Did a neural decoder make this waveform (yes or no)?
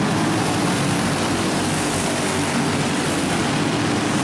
no